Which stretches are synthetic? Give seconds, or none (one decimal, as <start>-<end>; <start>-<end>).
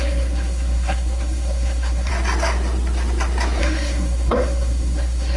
0.0-2.1; 3.6-5.4